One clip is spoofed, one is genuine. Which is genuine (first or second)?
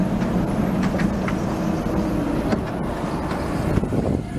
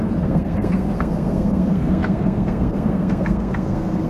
first